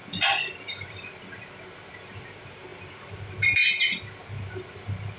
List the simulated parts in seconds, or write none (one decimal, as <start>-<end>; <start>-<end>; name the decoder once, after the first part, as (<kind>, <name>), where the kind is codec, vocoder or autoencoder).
none